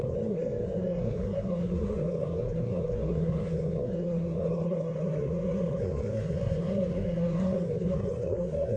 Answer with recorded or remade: remade